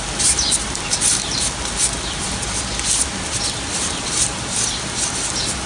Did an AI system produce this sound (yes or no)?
no